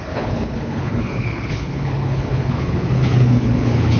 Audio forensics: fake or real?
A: fake